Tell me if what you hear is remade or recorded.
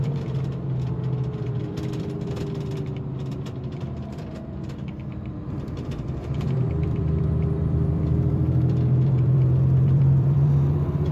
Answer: remade